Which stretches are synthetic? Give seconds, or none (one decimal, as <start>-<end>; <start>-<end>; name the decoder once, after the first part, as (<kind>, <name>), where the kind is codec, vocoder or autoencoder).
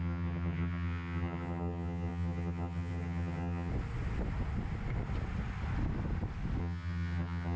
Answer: 0.0-3.7 (vocoder, HiFi-GAN); 6.6-7.6